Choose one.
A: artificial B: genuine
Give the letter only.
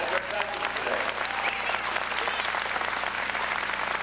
B